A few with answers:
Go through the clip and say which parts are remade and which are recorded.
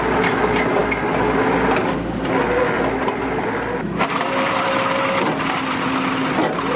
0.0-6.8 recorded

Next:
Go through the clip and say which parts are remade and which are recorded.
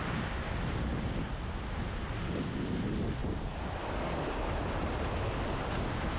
0.0-6.2 recorded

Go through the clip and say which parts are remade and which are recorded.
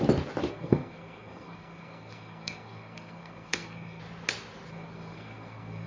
0.0-0.5 recorded; 0.5-4.0 remade; 4.0-4.7 recorded; 4.7-5.9 remade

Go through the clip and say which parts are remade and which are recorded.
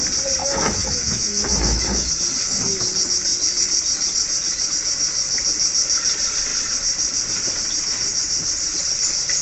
0.0-0.4 recorded; 0.4-2.1 remade; 2.1-9.4 recorded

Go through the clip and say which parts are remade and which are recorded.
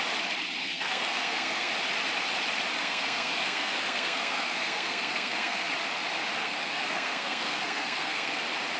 0.0-0.6 recorded; 0.6-1.7 remade; 1.7-2.8 recorded; 2.8-5.7 remade; 5.7-6.4 recorded; 6.4-8.4 remade; 8.4-8.8 recorded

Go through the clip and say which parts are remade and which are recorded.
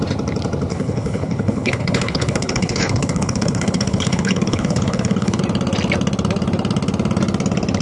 0.0-0.7 recorded; 0.7-5.4 remade; 5.4-7.8 recorded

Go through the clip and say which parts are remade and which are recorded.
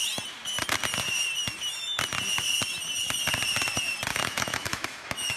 0.0-4.1 recorded; 4.1-5.4 remade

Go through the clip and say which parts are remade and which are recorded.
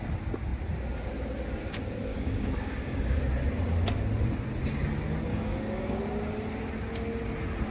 0.0-2.1 recorded; 2.1-3.2 remade; 3.2-5.3 recorded; 5.3-6.0 remade; 6.0-7.7 recorded